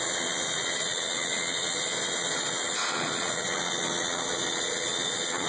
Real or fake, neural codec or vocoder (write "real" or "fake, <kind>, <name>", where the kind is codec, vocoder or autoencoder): fake, vocoder, Vocos